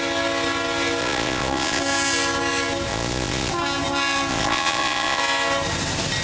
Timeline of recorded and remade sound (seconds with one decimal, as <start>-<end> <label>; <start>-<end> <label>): 0.0-1.0 recorded; 1.0-1.8 remade; 1.8-2.9 recorded; 2.9-3.5 remade; 3.5-4.3 recorded; 4.3-5.2 remade; 5.2-6.2 recorded